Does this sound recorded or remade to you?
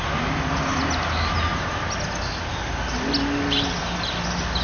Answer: recorded